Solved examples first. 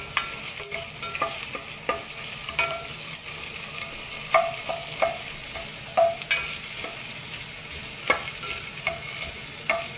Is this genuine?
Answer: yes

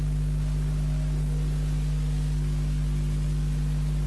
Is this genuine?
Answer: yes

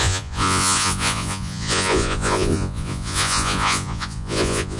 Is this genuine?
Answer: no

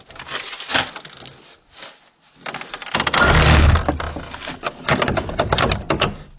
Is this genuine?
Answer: yes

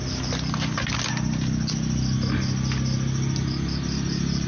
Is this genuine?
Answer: yes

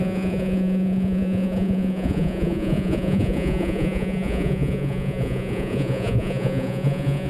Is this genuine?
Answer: no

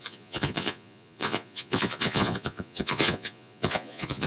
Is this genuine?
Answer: no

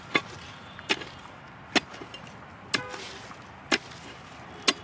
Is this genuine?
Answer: yes